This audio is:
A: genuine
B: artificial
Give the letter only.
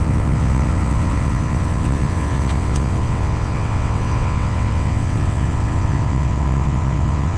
B